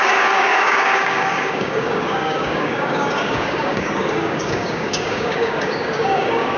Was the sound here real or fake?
fake